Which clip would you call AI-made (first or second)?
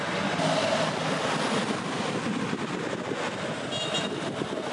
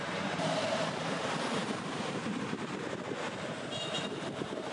second